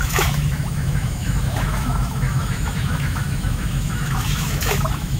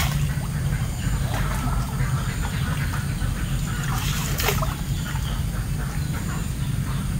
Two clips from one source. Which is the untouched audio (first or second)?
second